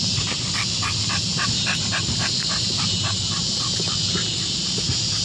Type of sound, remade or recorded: remade